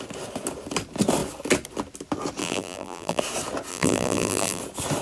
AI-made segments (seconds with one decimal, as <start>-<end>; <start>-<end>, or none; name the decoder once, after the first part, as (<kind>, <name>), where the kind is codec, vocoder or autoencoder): 2.4-3.2 (vocoder, BigVGAN v2); 3.7-4.6